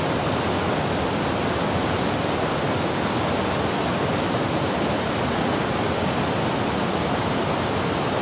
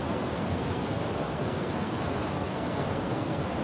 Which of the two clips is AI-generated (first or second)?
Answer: second